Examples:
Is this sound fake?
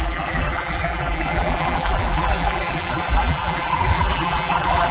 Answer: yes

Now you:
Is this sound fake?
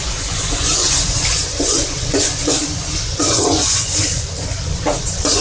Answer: yes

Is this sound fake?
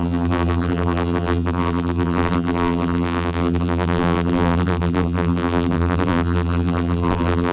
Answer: yes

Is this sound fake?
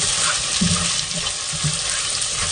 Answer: no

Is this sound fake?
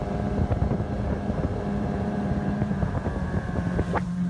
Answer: yes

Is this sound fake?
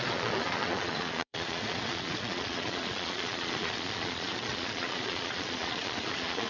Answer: yes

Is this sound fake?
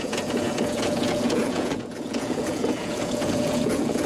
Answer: yes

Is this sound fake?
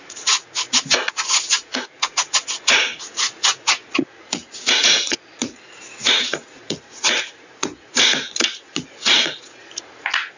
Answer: yes